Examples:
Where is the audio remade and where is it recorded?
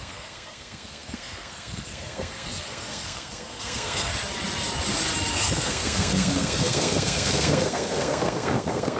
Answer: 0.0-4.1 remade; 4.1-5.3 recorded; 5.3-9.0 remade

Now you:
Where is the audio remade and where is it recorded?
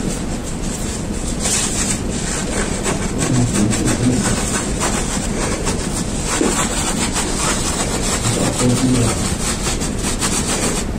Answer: 0.0-11.0 recorded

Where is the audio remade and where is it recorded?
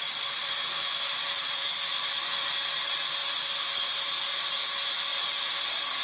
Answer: 0.0-0.4 recorded; 0.4-2.4 remade; 2.4-5.1 recorded; 5.1-5.6 remade; 5.6-6.0 recorded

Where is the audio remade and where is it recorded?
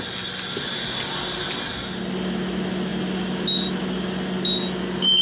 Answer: 0.0-5.2 recorded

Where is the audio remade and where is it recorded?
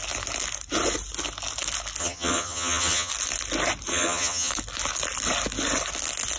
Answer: 0.0-2.0 recorded; 2.0-3.1 remade; 3.1-3.9 recorded; 3.9-4.5 remade; 4.5-6.4 recorded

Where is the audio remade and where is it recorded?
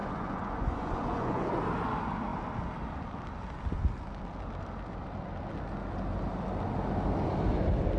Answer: 0.0-1.6 remade; 1.6-8.0 recorded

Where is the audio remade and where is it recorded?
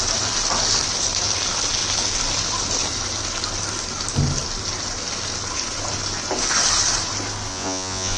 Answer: 0.0-7.5 recorded; 7.5-8.2 remade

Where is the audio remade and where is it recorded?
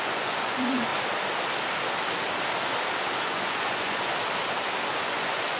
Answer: 0.0-0.9 remade; 0.9-3.2 recorded; 3.2-4.1 remade; 4.1-5.0 recorded; 5.0-5.6 remade